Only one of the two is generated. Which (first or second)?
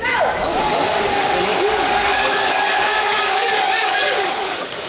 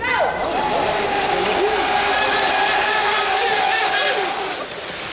first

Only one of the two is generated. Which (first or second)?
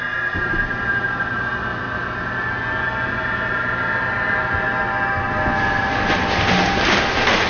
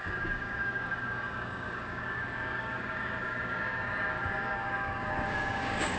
second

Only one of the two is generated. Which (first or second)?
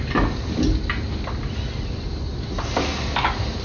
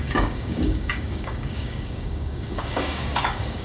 second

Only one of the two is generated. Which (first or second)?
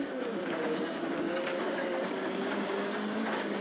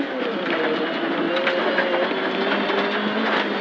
first